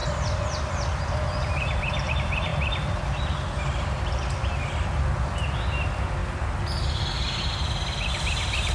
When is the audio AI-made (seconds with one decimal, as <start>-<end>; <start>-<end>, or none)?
none

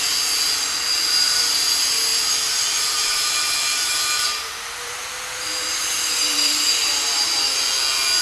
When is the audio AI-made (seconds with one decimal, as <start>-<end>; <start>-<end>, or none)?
0.0-8.2

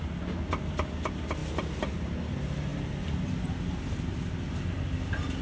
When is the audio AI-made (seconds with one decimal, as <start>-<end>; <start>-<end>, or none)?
none